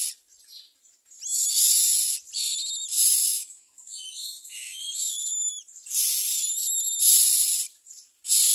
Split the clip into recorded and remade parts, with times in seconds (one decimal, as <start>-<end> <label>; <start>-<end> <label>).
0.0-3.3 recorded; 3.3-4.8 remade; 4.8-8.5 recorded